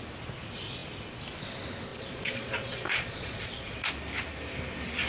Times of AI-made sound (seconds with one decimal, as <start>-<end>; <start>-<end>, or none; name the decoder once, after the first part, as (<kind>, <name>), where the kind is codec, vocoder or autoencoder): 1.9-3.9 (vocoder, Vocos)